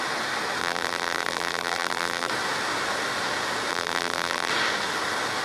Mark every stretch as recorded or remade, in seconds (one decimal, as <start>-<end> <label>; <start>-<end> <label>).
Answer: 0.0-0.6 recorded; 0.6-2.3 remade; 2.3-3.7 recorded; 3.7-4.5 remade; 4.5-5.4 recorded